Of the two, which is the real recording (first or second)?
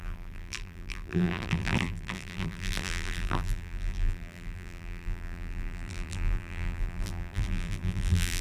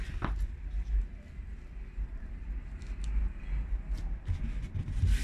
second